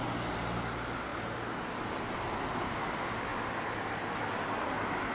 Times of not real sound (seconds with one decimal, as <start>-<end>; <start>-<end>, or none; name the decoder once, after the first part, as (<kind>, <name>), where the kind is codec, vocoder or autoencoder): none